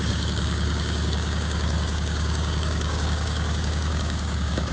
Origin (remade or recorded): remade